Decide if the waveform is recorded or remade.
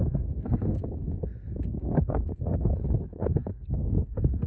remade